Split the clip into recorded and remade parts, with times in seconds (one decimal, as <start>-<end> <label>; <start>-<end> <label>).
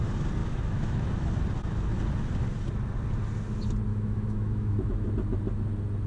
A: 0.0-0.4 recorded; 0.4-1.3 remade; 1.3-3.9 recorded; 3.9-5.1 remade; 5.1-6.1 recorded